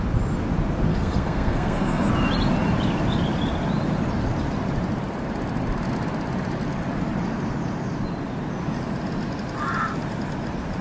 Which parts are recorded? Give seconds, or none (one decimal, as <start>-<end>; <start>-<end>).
0.0-0.9; 2.1-10.8